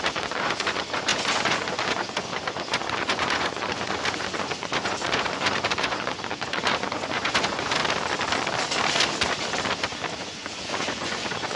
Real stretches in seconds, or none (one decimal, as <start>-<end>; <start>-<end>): 7.8-10.2